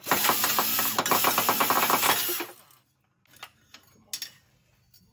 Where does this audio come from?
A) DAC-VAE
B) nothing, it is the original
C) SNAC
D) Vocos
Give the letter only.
B